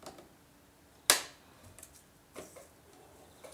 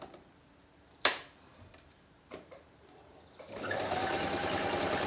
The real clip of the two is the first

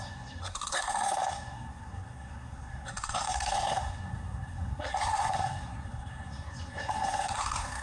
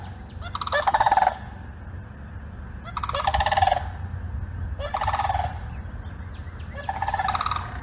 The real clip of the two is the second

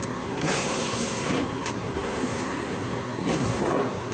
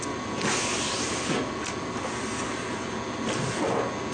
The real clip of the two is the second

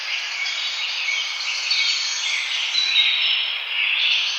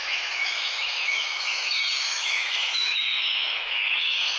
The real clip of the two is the first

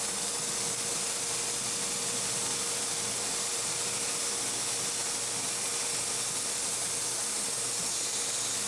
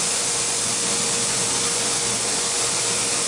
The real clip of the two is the first